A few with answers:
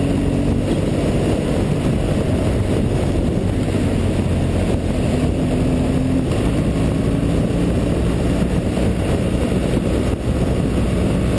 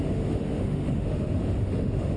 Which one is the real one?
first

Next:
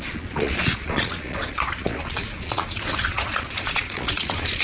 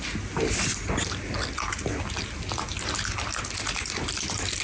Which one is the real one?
second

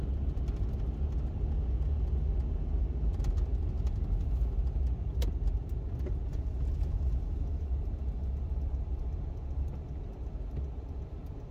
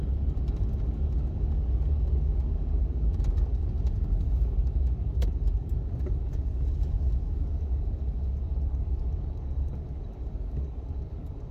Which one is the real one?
first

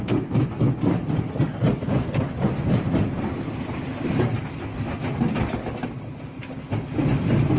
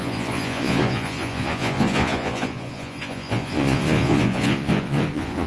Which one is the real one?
first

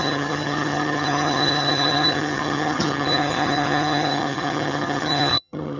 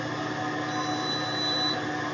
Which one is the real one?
second